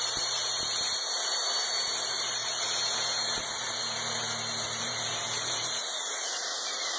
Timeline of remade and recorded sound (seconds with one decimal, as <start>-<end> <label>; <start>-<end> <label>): 0.0-0.4 remade; 0.4-2.0 recorded; 2.0-2.4 remade; 2.4-3.4 recorded; 3.4-3.8 remade; 3.8-4.8 recorded; 4.8-7.0 remade